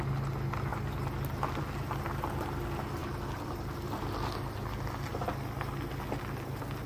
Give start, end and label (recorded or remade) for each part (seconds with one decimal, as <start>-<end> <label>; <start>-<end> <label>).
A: 0.0-6.9 recorded